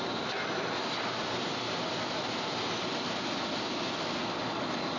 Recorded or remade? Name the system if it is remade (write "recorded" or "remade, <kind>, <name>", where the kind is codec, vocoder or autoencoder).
recorded